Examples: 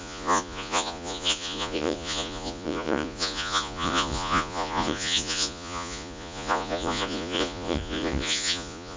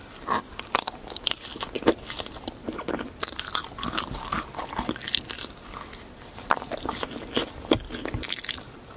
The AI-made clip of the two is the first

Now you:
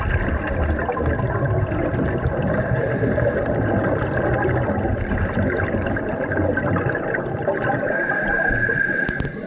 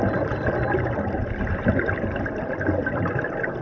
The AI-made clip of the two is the second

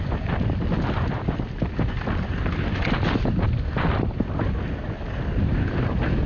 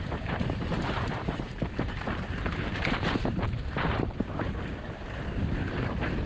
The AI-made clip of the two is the second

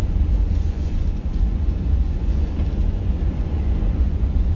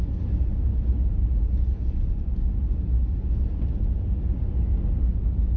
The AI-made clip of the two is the first